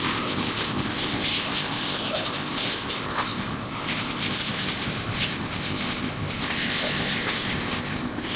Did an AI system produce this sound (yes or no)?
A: yes